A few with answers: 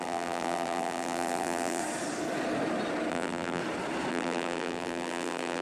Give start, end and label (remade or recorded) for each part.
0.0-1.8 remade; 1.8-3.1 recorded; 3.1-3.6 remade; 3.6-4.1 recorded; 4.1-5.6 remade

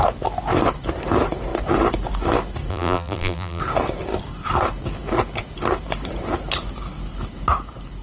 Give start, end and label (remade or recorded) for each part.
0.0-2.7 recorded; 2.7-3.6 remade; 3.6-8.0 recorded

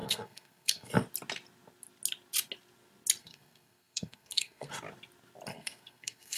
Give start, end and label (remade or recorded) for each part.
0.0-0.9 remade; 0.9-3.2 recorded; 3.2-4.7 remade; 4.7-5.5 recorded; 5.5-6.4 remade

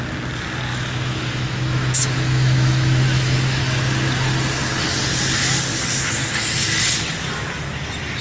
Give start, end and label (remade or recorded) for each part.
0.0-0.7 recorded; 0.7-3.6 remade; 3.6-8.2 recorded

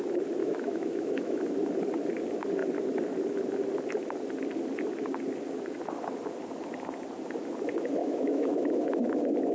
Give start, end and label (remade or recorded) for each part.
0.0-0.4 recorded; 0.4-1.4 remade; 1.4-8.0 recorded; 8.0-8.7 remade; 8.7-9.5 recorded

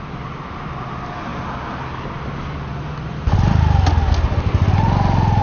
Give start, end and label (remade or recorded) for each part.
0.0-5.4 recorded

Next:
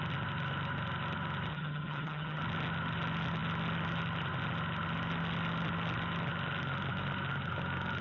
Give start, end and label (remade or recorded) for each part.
0.0-1.5 recorded; 1.5-2.4 remade; 2.4-8.0 recorded